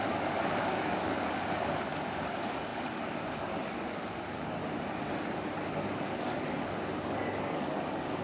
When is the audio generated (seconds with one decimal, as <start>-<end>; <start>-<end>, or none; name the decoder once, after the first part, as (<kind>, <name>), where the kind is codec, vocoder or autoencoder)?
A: 0.0-4.6 (codec, DAC); 5.7-8.2